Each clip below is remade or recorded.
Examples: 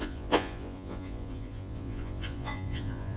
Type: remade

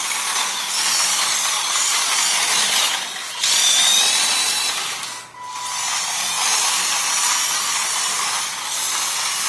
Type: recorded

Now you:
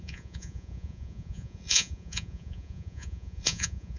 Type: remade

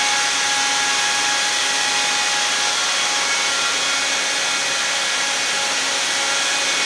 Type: recorded